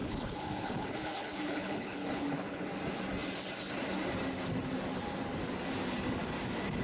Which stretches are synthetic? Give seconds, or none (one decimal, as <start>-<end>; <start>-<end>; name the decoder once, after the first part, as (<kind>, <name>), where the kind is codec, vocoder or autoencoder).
0.0-2.6 (codec, HILCodec)